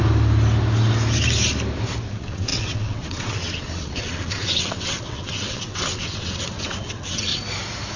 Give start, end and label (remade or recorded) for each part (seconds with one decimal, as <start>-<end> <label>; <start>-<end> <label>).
0.0-2.1 recorded; 2.1-7.3 remade; 7.3-8.0 recorded